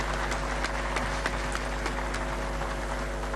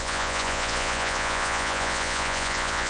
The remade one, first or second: second